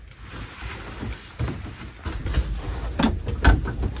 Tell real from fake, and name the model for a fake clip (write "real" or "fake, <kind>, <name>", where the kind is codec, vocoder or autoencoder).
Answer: real